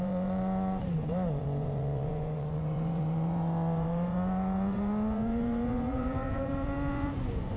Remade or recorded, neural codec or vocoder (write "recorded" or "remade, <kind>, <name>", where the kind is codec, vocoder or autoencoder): remade, vocoder, Vocos